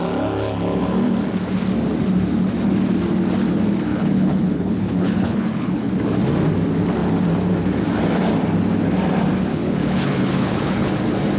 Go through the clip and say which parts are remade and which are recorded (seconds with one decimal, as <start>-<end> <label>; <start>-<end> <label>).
0.0-3.9 recorded; 3.9-5.9 remade; 5.9-9.5 recorded; 9.5-10.9 remade; 10.9-11.4 recorded

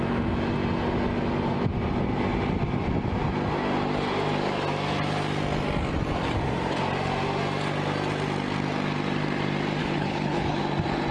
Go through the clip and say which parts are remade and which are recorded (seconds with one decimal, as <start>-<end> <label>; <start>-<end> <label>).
0.0-9.8 recorded; 9.8-10.6 remade; 10.6-11.1 recorded

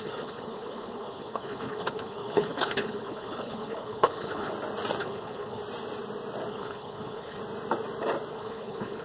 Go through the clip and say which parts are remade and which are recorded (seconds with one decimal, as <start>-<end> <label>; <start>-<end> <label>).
0.0-4.5 remade; 4.5-5.0 recorded; 5.0-5.6 remade; 5.6-6.5 recorded; 6.5-7.4 remade; 7.4-8.3 recorded; 8.3-9.0 remade